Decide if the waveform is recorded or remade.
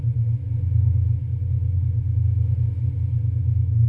recorded